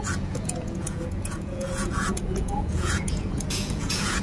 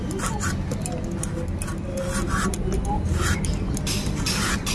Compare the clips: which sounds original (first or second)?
second